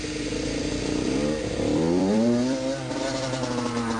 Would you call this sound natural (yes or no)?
no